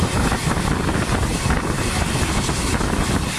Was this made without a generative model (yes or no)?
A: yes